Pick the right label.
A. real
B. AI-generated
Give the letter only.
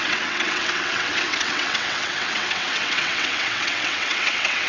B